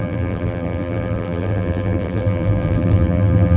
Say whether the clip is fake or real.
fake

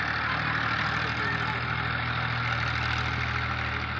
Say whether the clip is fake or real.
real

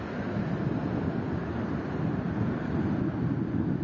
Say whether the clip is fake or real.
real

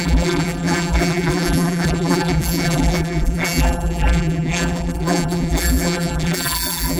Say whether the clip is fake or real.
fake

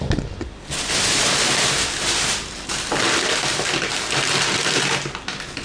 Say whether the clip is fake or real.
real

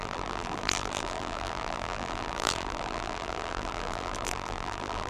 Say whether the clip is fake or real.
fake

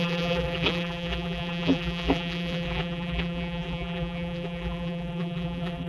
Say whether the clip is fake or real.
fake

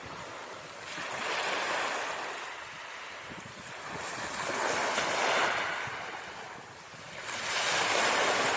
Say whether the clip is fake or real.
real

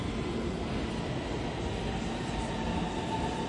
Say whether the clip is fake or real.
real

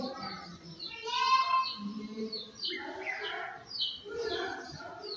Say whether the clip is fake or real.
fake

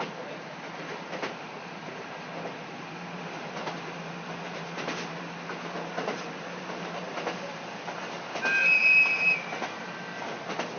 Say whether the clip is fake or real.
fake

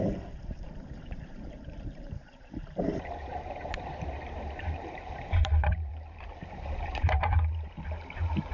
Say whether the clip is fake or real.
fake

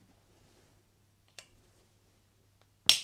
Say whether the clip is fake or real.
real